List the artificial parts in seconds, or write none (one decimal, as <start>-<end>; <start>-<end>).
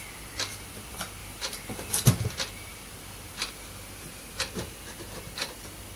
1.2-1.9; 2.7-6.0